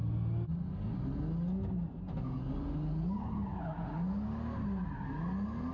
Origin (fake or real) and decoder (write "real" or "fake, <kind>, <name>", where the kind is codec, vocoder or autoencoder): real